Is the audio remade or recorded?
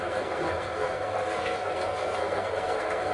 remade